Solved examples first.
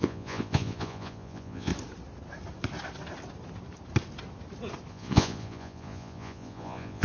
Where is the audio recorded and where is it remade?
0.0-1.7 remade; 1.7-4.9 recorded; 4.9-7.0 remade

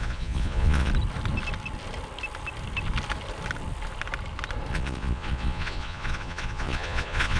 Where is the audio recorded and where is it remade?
0.0-0.9 remade; 0.9-4.7 recorded; 4.7-7.4 remade

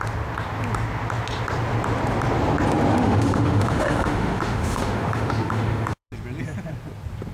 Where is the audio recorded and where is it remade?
0.0-2.9 recorded; 2.9-6.1 remade; 6.1-7.3 recorded

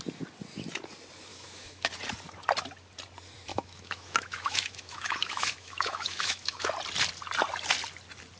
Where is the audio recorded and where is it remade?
0.0-1.3 recorded; 1.3-1.9 remade; 1.9-3.5 recorded; 3.5-6.7 remade; 6.7-8.4 recorded

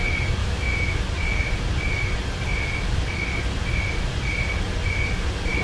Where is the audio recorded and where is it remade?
0.0-0.4 recorded; 0.4-1.0 remade; 1.0-5.6 recorded

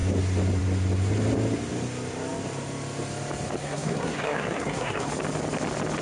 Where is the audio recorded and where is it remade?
0.0-3.6 recorded; 3.6-5.1 remade; 5.1-6.0 recorded

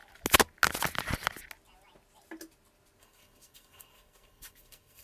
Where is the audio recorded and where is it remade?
0.0-3.0 recorded; 3.0-5.0 remade

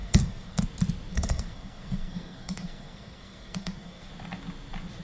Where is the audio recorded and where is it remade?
0.0-0.6 remade; 0.6-1.1 recorded; 1.1-4.1 remade; 4.1-5.0 recorded